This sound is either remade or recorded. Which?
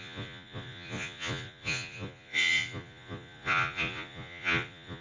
remade